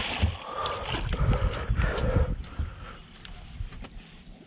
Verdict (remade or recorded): recorded